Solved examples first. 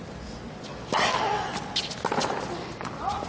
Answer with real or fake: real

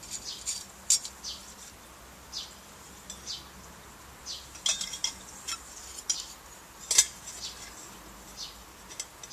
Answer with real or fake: real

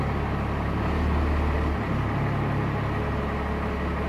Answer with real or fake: real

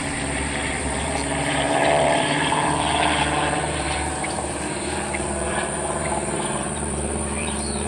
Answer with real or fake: fake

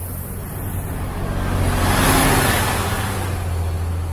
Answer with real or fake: real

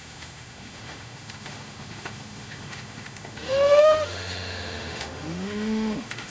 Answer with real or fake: fake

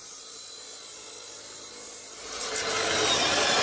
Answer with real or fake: real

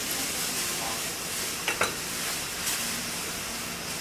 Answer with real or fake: real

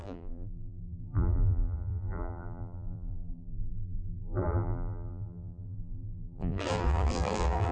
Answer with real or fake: fake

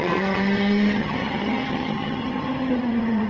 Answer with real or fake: fake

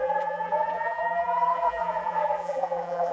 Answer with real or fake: fake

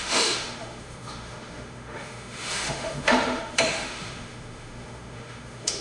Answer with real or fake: fake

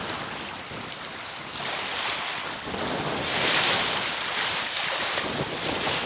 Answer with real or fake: real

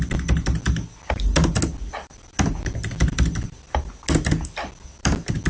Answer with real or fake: real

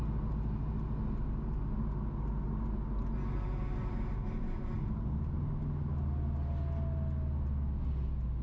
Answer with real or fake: real